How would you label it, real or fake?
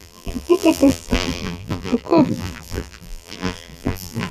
fake